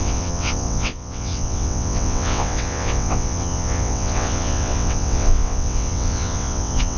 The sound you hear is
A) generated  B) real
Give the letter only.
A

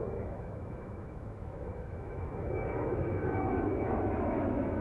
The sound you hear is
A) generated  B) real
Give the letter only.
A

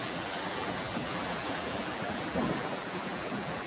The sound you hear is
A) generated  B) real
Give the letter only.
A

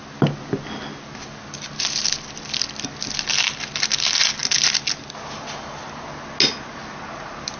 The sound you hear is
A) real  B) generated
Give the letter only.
A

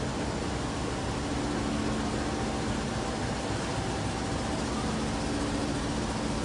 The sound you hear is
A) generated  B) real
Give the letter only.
B